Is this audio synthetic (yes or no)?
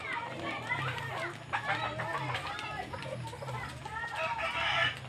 no